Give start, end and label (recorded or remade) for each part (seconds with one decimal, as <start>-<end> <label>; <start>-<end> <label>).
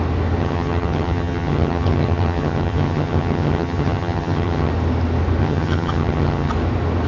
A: 0.0-0.4 recorded; 0.4-4.7 remade; 4.7-5.4 recorded; 5.4-6.5 remade; 6.5-7.1 recorded